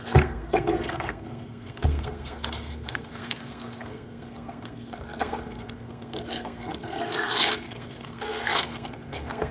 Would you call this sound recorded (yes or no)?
no